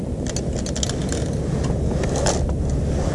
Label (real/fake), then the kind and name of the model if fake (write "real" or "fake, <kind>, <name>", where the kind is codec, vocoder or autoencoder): real